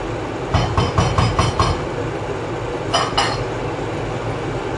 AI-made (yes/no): no